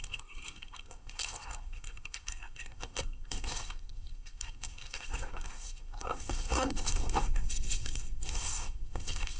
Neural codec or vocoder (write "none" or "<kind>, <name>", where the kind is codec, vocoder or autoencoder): codec, SNAC